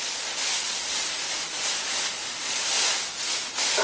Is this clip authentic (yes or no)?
yes